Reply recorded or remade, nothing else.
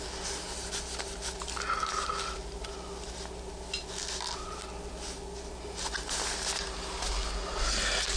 recorded